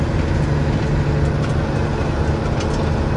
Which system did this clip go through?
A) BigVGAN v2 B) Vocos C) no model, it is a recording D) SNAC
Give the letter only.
C